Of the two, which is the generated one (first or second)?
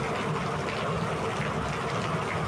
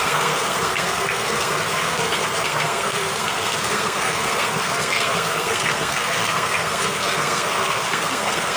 second